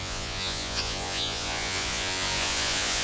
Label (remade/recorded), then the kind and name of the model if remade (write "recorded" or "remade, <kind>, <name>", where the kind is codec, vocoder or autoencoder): remade, vocoder, Vocos